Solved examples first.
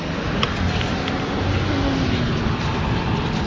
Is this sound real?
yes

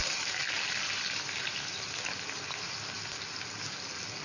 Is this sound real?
yes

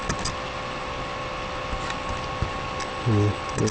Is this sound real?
yes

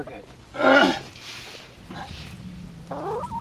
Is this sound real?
yes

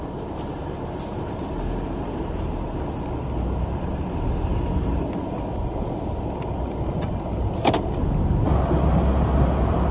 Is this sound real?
yes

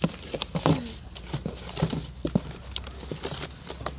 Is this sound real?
yes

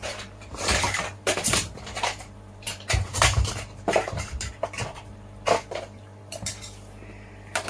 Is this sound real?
no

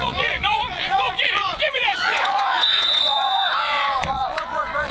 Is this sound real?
no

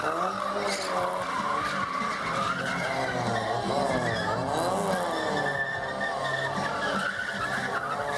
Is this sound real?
yes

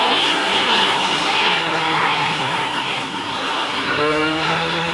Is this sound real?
no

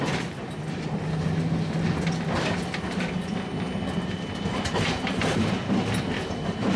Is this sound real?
yes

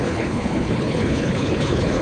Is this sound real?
no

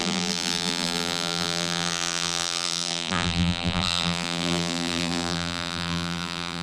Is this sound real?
no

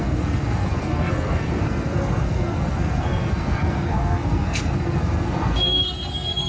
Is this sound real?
no